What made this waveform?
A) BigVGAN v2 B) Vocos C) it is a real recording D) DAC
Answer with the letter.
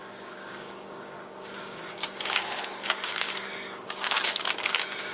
D